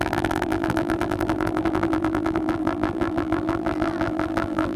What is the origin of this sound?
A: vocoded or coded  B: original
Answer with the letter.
A